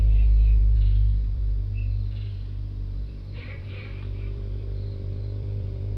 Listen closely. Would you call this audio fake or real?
fake